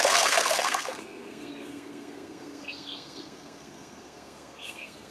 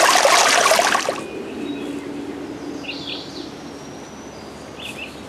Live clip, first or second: second